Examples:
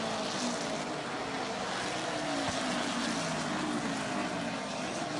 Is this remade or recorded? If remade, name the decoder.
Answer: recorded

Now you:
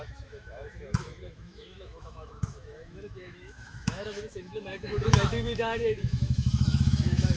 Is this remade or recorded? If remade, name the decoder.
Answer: remade, autoencoder, DAC-VAE